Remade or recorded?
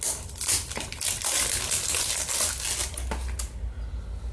recorded